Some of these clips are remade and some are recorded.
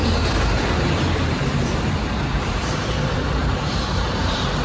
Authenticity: remade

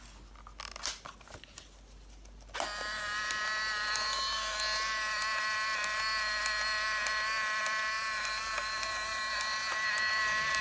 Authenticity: recorded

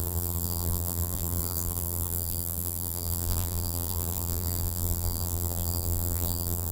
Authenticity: remade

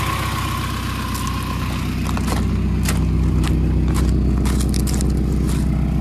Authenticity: recorded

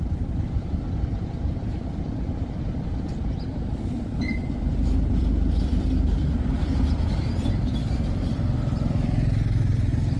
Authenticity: remade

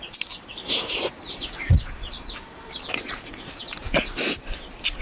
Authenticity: remade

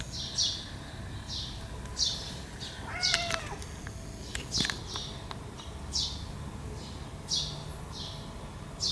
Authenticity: recorded